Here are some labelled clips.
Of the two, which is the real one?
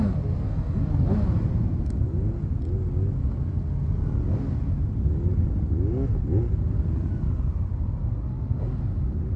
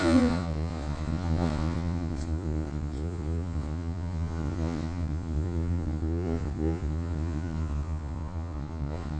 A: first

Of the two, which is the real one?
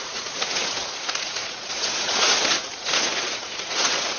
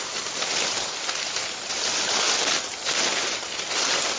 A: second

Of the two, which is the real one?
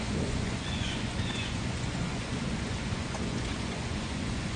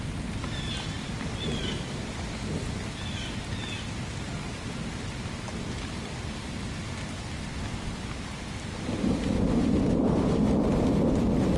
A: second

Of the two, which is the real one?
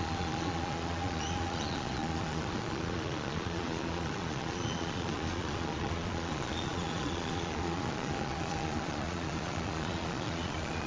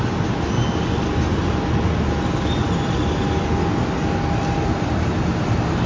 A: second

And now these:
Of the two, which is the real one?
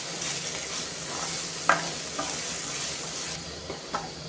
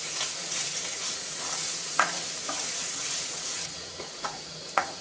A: first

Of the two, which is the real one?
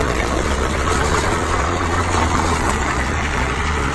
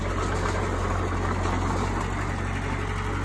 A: second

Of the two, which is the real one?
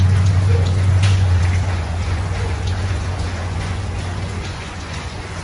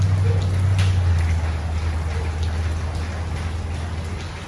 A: second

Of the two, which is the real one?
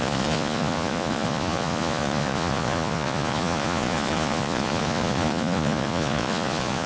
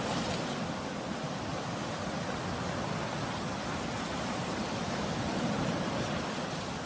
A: second